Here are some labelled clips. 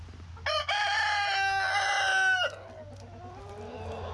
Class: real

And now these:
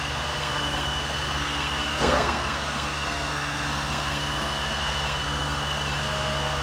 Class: fake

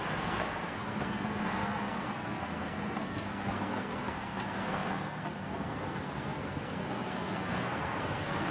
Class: fake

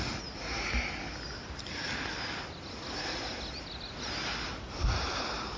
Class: real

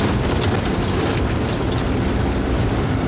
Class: real